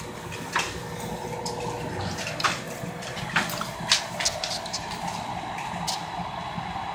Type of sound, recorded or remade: recorded